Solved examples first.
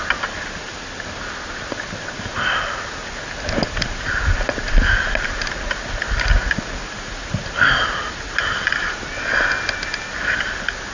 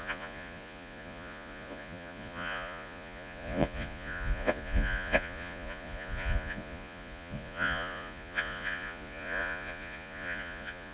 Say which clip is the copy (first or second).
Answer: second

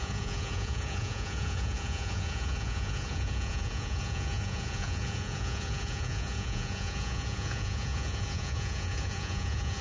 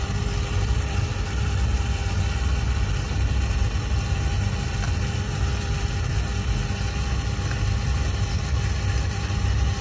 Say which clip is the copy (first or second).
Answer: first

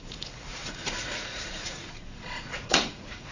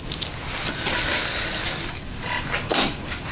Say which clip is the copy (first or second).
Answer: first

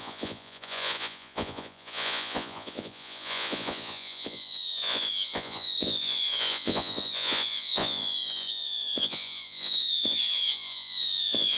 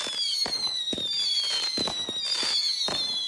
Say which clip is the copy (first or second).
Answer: first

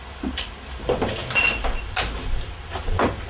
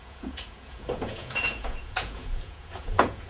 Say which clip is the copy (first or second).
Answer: second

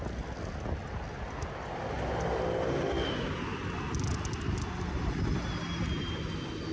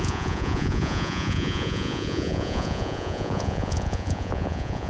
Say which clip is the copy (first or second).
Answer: second